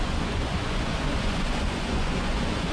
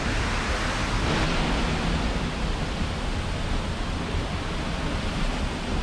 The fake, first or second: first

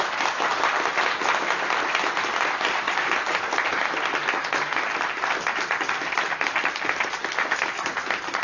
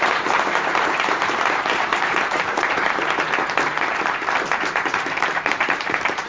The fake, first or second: second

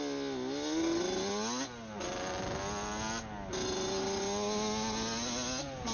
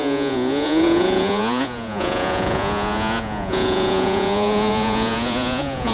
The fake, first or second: second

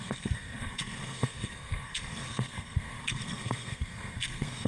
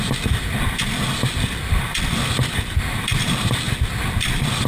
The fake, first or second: first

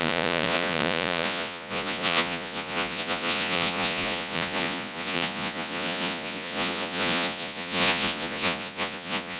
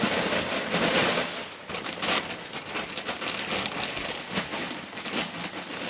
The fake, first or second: first